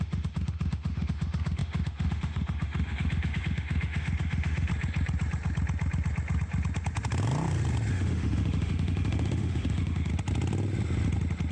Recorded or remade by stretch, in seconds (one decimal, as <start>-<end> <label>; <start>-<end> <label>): 0.0-4.7 remade; 4.7-7.9 recorded; 7.9-10.1 remade; 10.1-11.5 recorded